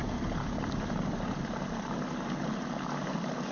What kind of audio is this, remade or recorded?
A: recorded